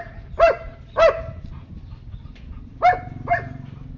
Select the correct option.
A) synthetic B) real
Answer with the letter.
B